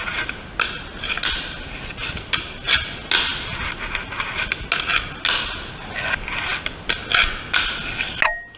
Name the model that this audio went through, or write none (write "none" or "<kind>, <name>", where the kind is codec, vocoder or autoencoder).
none